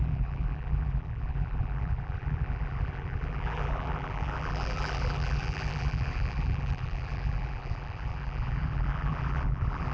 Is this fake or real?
fake